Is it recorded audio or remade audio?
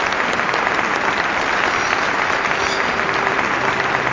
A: recorded